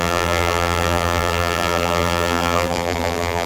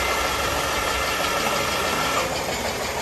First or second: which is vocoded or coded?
first